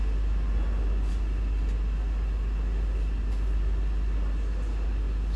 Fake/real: real